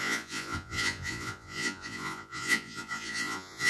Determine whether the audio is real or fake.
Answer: fake